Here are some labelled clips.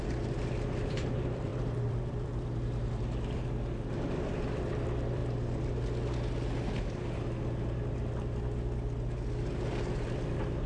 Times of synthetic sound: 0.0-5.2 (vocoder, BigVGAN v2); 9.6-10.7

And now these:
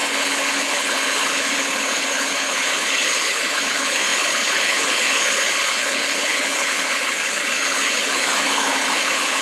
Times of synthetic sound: 0.0-9.4 (codec, HILCodec)

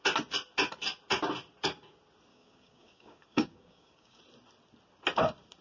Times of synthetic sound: 2.3-4.2 (codec, DAC)

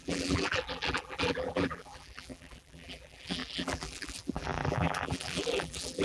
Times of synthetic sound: 0.0-6.0 (vocoder, BigVGAN v2)

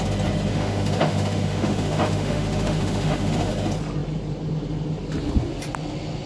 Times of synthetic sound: 0.5-3.5 (autoencoder, DAC-VAE)